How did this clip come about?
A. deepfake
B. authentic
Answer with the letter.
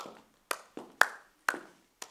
B